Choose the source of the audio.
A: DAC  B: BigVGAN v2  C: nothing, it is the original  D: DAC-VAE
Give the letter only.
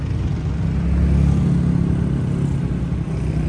C